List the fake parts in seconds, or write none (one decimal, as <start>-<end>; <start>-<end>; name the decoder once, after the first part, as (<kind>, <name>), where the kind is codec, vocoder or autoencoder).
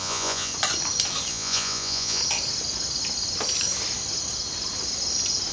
0.0-0.5 (vocoder, Vocos); 1.3-2.2